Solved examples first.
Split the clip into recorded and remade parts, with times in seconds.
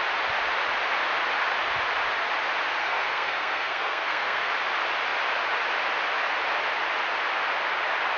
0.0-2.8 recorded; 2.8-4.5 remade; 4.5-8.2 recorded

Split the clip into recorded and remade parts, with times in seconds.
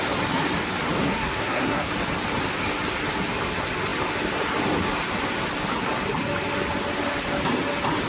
0.0-1.0 recorded; 1.0-1.9 remade; 1.9-8.1 recorded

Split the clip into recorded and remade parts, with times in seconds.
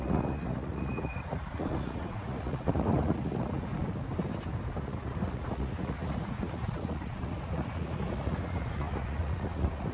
0.0-3.7 remade; 3.7-4.8 recorded; 4.8-9.9 remade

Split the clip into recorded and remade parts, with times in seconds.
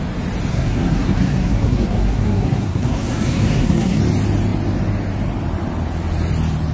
0.0-0.5 recorded; 0.5-4.0 remade; 4.0-6.7 recorded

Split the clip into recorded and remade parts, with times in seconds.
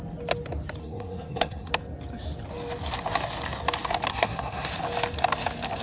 0.0-0.8 recorded; 0.8-1.7 remade; 1.7-4.1 recorded; 4.1-4.7 remade; 4.7-5.8 recorded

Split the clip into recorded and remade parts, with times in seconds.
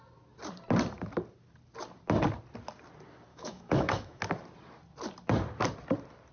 0.0-3.3 recorded; 3.3-4.2 remade; 4.2-6.3 recorded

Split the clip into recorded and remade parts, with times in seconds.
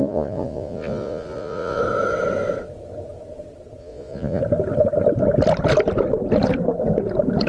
0.0-1.8 remade; 1.8-3.8 recorded; 3.8-4.4 remade; 4.4-7.5 recorded